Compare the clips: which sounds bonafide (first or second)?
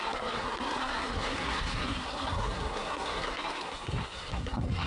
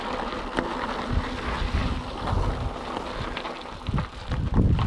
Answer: second